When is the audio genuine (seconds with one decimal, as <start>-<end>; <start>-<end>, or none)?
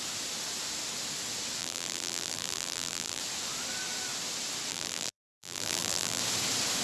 0.0-1.6; 3.2-4.7; 6.2-6.8